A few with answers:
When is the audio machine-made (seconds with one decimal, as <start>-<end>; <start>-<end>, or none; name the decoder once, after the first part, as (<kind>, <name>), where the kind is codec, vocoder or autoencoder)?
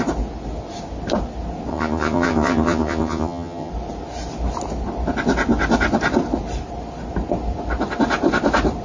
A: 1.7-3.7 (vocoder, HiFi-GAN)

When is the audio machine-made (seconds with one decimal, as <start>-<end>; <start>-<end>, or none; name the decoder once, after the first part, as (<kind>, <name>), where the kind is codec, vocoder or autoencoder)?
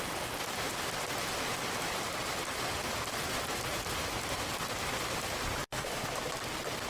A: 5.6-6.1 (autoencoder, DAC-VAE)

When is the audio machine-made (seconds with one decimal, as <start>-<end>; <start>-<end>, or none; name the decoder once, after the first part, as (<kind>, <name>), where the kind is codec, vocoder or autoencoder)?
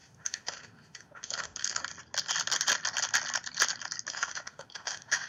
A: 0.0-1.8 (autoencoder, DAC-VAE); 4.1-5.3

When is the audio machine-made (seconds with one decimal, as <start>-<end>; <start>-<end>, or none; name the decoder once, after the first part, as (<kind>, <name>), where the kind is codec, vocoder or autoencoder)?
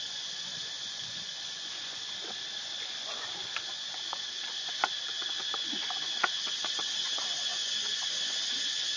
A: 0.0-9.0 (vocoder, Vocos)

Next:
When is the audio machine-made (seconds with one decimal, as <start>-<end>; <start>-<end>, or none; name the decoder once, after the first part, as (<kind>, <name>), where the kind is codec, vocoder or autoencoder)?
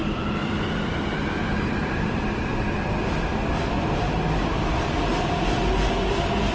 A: 0.0-1.2 (vocoder, BigVGAN v2); 1.8-3.1